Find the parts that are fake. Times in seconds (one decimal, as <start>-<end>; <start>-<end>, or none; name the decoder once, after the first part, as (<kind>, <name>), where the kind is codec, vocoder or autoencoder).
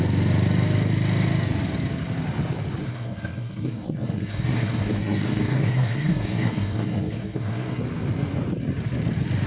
2.8-7.8 (codec, SNAC)